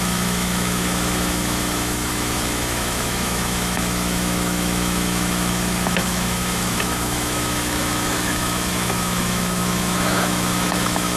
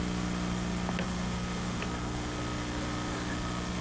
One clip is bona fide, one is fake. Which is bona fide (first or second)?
second